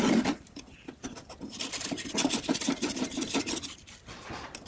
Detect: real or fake real